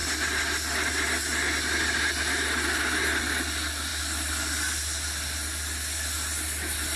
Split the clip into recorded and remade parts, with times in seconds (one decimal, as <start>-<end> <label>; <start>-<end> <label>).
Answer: 0.0-7.0 recorded